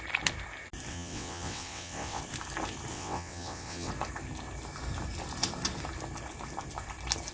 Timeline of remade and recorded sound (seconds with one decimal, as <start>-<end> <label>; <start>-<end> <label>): 0.0-0.9 recorded; 0.9-2.2 remade; 2.2-2.9 recorded; 2.9-3.9 remade; 3.9-7.3 recorded